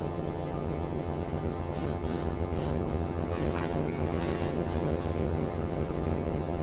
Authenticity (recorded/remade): remade